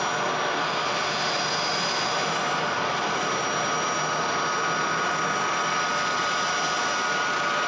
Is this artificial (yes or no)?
no